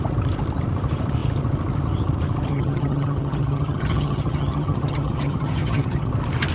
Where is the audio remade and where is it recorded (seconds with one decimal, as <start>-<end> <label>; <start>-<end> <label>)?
0.0-2.5 recorded; 2.5-6.1 remade; 6.1-6.5 recorded